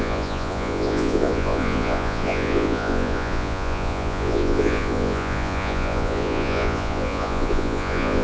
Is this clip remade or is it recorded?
remade